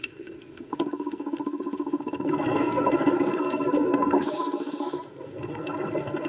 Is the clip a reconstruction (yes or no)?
yes